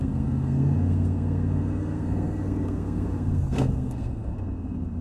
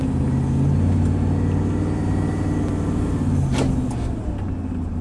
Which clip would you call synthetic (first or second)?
first